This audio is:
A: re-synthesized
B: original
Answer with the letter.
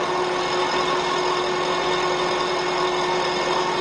B